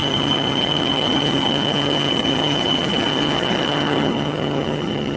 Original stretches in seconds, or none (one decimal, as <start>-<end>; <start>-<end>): none

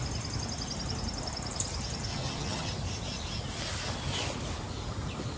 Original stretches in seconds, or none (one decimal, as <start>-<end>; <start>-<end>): 0.0-2.1; 2.7-5.4